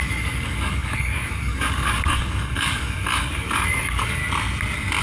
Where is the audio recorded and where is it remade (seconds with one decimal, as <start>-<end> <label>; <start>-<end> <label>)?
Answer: 0.0-4.2 remade; 4.2-5.0 recorded